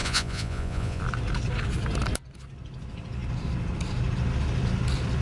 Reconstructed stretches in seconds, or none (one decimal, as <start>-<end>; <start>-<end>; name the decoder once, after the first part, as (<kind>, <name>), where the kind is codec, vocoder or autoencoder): 0.0-1.0 (vocoder, Vocos)